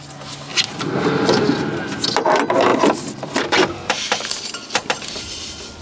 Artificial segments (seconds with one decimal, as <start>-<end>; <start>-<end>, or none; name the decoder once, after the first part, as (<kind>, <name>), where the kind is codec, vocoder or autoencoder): 2.7-4.3 (vocoder, BigVGAN v2)

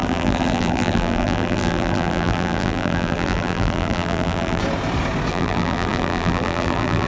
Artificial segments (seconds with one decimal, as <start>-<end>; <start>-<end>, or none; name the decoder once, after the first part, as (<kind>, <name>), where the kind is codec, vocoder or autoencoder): 0.0-4.6 (vocoder, BigVGAN v2); 5.3-7.1